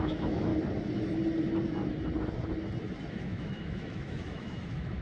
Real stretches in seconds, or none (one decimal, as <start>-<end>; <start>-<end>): 0.5-3.1

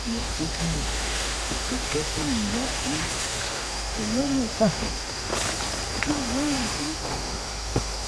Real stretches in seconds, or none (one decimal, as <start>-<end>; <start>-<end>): 5.3-6.1

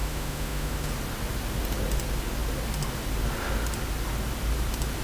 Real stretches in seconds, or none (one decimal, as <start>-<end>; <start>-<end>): 0.9-5.0

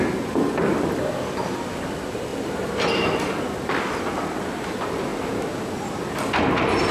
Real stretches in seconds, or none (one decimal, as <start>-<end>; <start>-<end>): 0.0-6.9